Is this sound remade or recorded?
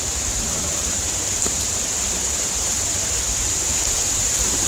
remade